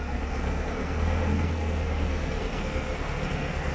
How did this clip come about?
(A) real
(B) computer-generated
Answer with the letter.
B